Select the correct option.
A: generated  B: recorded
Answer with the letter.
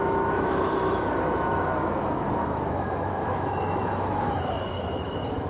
A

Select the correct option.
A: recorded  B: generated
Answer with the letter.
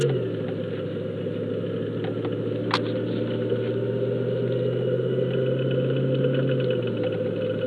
A